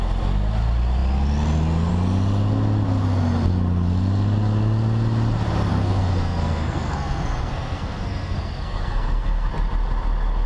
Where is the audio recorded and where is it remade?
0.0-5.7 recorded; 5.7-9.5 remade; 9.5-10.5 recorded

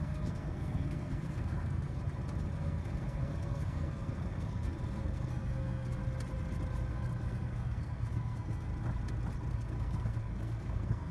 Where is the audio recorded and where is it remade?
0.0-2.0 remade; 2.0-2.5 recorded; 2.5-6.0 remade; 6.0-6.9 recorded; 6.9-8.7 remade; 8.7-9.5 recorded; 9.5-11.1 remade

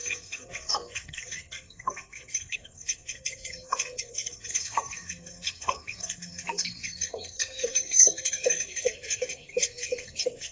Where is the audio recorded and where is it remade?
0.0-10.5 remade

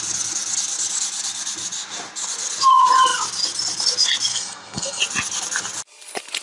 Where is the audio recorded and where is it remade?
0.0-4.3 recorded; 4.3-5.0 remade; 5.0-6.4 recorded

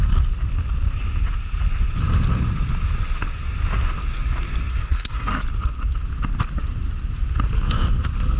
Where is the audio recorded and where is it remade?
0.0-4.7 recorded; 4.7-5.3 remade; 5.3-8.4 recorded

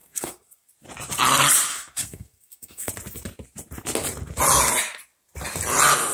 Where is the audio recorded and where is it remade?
0.0-0.7 remade; 0.7-1.7 recorded; 1.7-2.9 remade; 2.9-6.1 recorded

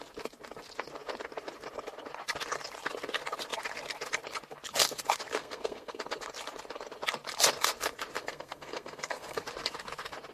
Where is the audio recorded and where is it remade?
0.0-5.4 recorded; 5.4-6.0 remade; 6.0-8.2 recorded; 8.2-9.4 remade; 9.4-10.3 recorded